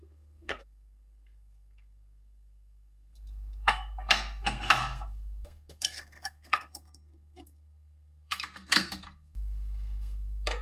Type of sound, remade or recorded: remade